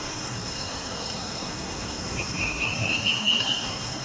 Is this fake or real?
fake